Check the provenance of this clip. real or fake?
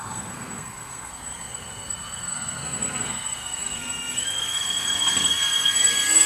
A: fake